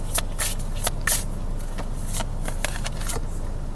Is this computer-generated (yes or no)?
no